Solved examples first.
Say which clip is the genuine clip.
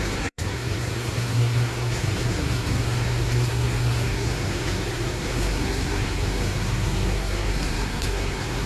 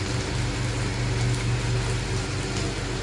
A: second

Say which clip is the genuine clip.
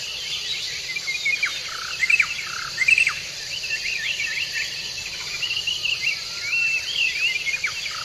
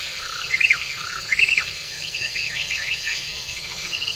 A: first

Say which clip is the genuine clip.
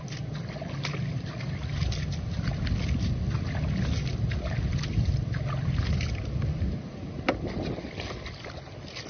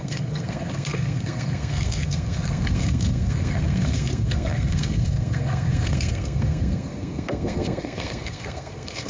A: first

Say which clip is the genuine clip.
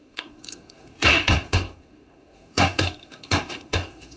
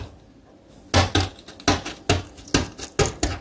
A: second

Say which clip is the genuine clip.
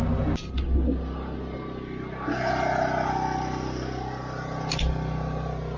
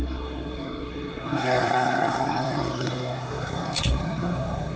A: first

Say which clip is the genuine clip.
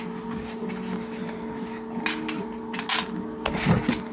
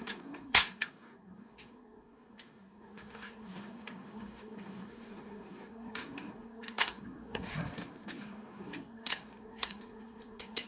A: first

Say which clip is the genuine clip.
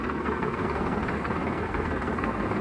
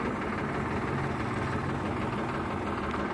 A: second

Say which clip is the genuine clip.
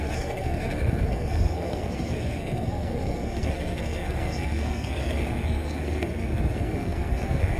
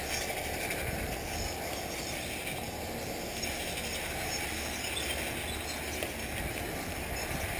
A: second